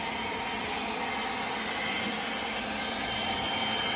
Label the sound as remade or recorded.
recorded